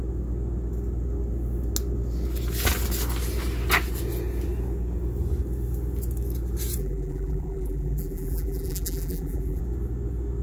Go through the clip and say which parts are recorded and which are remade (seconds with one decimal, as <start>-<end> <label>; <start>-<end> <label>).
0.0-6.8 recorded; 6.8-9.6 remade; 9.6-10.4 recorded